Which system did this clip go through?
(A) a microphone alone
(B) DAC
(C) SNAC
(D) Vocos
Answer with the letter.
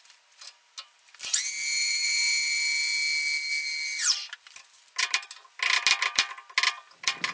A